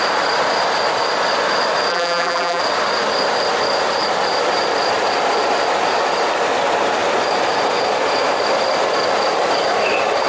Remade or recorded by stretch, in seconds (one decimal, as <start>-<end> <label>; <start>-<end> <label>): 0.0-1.9 recorded; 1.9-2.6 remade; 2.6-10.3 recorded